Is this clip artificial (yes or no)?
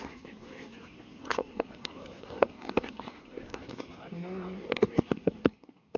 yes